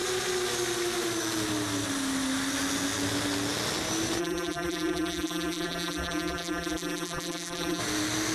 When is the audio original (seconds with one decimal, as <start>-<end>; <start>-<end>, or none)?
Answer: 0.0-4.2; 7.8-8.3

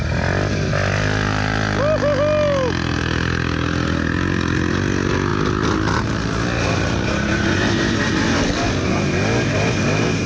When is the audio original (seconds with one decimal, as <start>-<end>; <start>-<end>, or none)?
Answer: 0.0-10.3